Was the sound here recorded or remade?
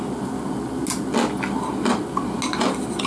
recorded